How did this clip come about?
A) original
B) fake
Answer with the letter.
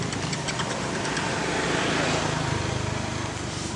A